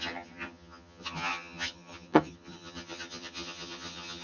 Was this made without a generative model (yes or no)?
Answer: no